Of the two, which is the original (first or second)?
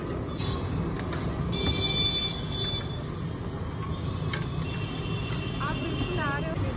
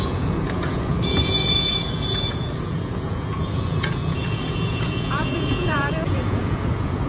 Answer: first